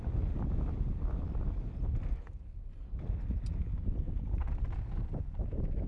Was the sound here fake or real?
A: real